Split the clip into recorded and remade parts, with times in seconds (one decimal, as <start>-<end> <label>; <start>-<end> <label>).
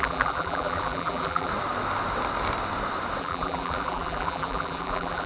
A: 0.0-1.5 remade; 1.5-3.2 recorded; 3.2-5.3 remade